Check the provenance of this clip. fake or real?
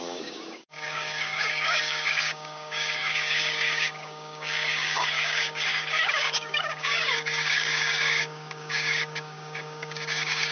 fake